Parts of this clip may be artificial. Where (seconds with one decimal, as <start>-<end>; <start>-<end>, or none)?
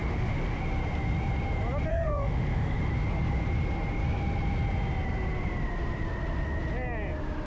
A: 0.0-0.6; 1.9-2.9